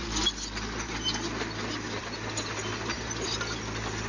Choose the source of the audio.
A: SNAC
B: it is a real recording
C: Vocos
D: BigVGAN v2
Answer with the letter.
B